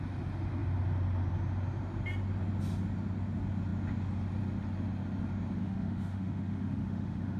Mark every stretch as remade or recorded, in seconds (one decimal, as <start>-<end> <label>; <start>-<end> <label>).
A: 0.0-5.6 recorded; 5.6-7.4 remade